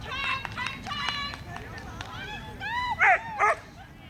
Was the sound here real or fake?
real